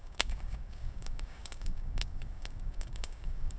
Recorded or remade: remade